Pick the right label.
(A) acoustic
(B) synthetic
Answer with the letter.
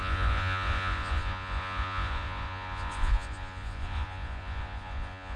B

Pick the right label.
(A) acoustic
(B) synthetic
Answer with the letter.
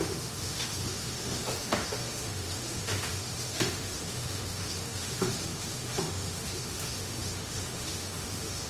B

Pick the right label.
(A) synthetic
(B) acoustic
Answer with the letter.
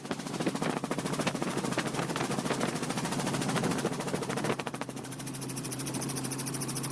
A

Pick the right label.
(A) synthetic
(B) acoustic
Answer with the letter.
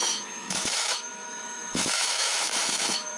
A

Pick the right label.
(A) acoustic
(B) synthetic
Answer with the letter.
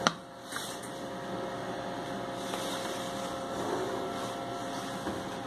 A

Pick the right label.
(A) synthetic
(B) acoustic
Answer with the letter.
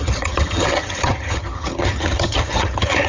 A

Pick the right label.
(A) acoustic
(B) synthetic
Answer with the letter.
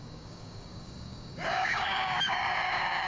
B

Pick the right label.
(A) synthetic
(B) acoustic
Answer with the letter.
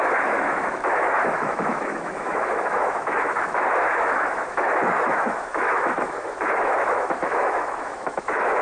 A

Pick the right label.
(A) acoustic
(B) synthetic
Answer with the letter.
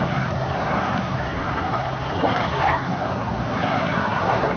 B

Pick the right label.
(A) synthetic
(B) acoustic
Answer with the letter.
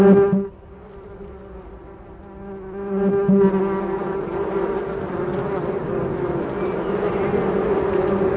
B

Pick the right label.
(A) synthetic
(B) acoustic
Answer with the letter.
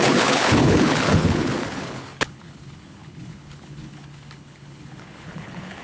A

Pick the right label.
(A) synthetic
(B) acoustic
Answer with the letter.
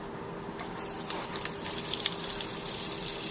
B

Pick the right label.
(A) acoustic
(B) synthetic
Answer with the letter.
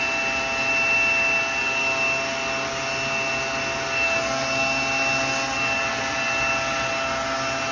A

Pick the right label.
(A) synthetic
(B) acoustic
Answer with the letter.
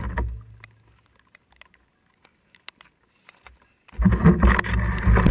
B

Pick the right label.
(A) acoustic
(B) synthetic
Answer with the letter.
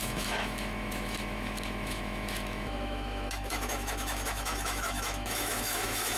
B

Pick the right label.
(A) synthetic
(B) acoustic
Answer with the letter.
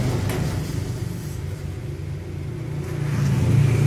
B